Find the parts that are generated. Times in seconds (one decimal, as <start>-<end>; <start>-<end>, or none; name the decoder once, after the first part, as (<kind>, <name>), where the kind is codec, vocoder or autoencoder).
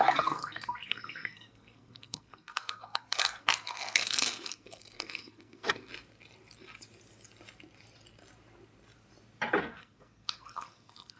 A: 0.0-5.9 (codec, SNAC); 9.6-11.2